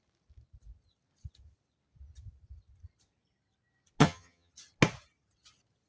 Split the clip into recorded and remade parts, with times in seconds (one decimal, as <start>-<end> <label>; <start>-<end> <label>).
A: 0.0-4.0 recorded; 4.0-4.5 remade; 4.5-5.9 recorded